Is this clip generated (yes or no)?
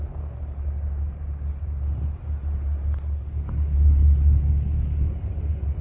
no